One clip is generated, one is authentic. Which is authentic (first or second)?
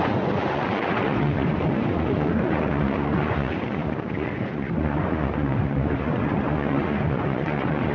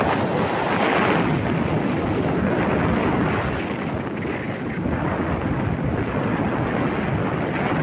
second